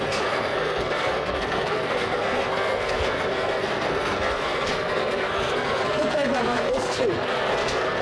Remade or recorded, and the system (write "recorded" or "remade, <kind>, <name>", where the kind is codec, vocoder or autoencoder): remade, codec, SNAC